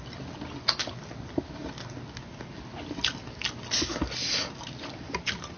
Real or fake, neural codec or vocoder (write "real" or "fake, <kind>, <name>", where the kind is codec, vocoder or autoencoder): real